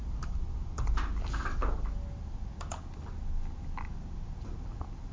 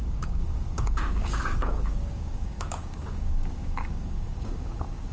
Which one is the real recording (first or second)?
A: first